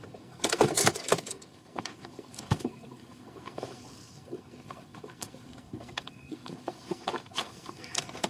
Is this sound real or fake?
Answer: fake